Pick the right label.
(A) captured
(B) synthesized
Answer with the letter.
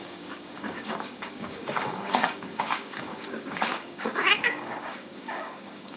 B